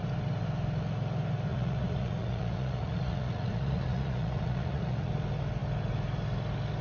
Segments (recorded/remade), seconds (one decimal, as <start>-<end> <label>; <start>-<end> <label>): 0.0-1.5 recorded; 1.5-5.1 remade; 5.1-6.8 recorded